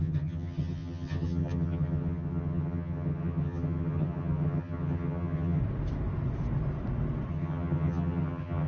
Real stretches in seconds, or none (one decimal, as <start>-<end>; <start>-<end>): 5.6-7.3